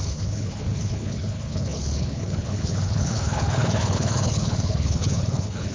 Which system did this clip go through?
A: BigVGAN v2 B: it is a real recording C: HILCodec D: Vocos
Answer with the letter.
C